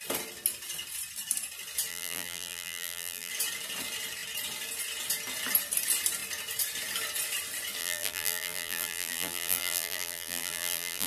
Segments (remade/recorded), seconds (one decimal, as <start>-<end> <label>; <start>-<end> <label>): 0.0-1.9 recorded; 1.9-3.3 remade; 3.3-7.8 recorded; 7.8-11.1 remade